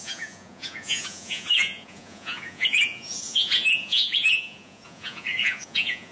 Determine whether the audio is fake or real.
fake